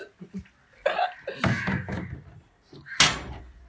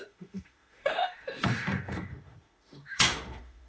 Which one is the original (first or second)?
first